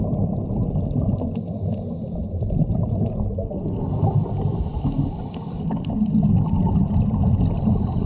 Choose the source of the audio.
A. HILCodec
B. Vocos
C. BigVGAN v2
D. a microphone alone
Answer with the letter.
D